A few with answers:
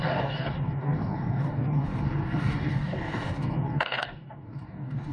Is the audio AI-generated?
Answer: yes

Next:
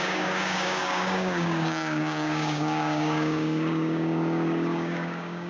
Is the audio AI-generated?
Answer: yes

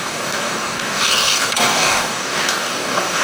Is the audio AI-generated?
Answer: yes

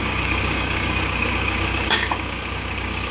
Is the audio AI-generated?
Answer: yes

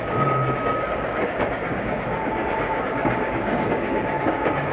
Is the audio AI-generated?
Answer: yes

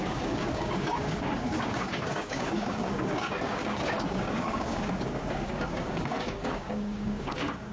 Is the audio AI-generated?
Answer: yes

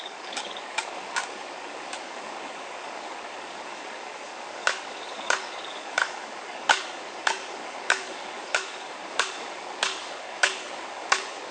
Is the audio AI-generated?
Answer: yes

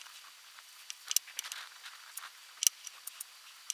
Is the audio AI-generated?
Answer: no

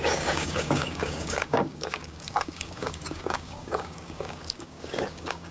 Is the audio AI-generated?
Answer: yes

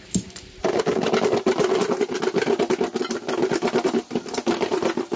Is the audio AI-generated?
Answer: no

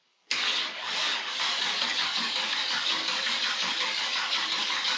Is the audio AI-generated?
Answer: yes